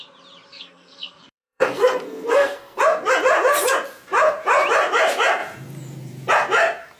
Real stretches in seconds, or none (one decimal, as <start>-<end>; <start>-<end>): 0.0-0.5; 2.8-7.0